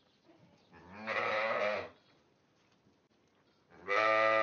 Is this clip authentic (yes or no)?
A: yes